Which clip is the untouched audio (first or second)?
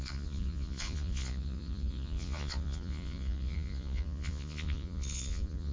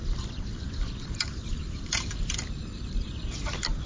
second